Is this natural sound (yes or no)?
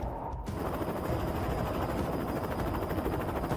yes